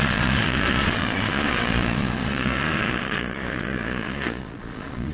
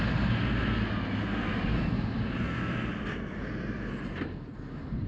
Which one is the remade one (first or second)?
first